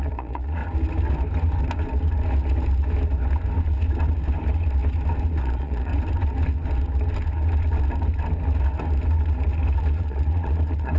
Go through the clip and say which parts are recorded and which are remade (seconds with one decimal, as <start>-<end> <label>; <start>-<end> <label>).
0.0-0.6 remade; 0.6-5.4 recorded; 5.4-5.9 remade; 5.9-9.8 recorded; 9.8-11.0 remade